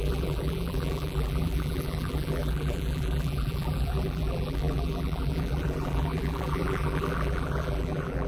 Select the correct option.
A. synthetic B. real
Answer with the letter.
A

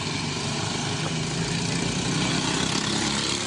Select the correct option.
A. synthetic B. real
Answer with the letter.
B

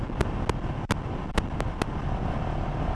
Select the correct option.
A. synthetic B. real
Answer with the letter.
B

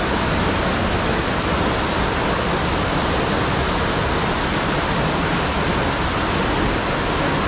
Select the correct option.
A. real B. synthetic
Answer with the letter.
A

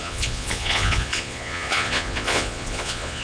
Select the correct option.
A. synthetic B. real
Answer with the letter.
A